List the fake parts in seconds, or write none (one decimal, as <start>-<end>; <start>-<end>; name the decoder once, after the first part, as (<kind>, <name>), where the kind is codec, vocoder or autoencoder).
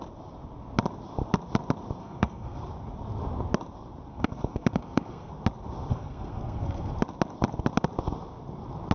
2.0-2.6 (codec, SNAC); 4.1-5.3; 5.9-6.9